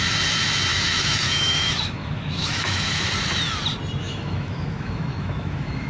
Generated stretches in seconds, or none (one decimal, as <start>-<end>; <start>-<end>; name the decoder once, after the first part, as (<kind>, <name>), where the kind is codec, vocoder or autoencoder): 0.7-3.1 (autoencoder, DAC-VAE); 4.0-5.9

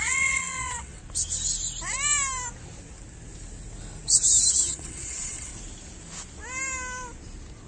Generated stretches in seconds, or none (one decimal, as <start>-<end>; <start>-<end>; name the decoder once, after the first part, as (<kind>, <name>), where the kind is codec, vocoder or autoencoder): 0.0-1.0 (vocoder, WaveNeXt); 4.5-5.5

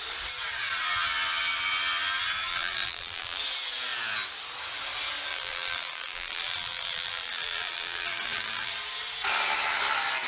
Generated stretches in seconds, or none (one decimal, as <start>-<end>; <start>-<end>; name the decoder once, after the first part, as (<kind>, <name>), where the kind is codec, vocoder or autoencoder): 2.5-3.4 (vocoder, BigVGAN v2); 5.3-8.7